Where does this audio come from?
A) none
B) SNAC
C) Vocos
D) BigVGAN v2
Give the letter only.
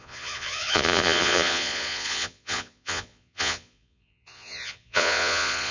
C